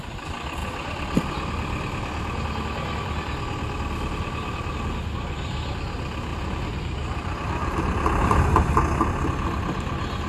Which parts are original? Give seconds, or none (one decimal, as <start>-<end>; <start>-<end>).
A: 0.0-6.3; 8.7-10.3